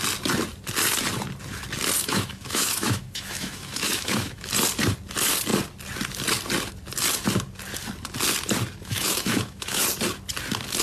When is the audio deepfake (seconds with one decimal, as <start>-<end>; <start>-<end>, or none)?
2.0-4.5; 8.8-9.8